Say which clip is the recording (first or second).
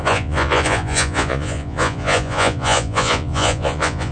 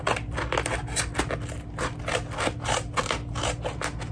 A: second